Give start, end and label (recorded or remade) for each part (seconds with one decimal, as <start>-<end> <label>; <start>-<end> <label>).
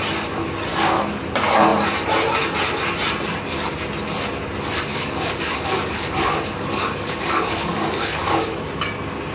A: 0.0-0.7 recorded; 0.7-1.2 remade; 1.2-4.7 recorded; 4.7-8.9 remade; 8.9-9.3 recorded